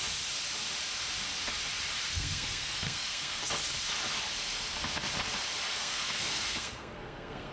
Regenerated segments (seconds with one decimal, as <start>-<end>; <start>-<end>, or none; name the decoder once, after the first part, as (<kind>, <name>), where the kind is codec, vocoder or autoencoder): 2.1-3.4 (codec, SNAC); 5.7-7.5